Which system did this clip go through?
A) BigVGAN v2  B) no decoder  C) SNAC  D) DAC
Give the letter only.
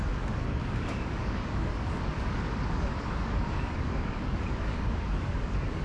D